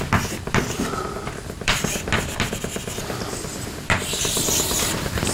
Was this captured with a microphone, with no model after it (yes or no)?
no